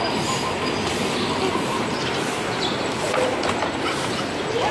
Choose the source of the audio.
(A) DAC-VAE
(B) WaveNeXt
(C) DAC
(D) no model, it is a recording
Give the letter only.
D